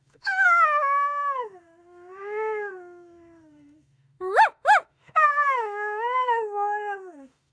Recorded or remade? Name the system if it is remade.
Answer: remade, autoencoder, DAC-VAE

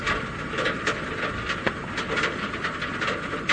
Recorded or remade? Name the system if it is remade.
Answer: recorded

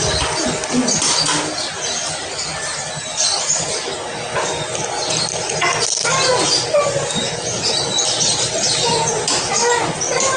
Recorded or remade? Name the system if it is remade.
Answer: recorded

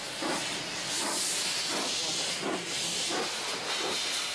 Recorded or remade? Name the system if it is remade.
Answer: recorded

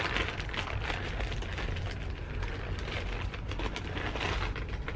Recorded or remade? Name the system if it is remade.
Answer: recorded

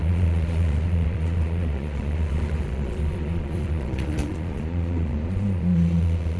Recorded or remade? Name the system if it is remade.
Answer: remade, vocoder, Vocos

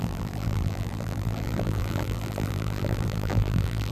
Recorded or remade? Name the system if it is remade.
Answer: remade, vocoder, BigVGAN v2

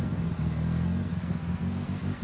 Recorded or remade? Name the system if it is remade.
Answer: remade, codec, SNAC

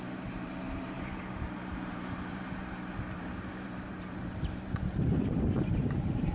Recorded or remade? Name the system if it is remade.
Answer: remade, vocoder, BigVGAN v2